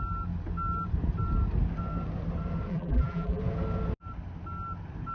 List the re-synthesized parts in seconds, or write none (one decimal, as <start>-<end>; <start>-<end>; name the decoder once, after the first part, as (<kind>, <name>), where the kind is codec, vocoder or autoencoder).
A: 2.7-3.4 (vocoder, BigVGAN v2)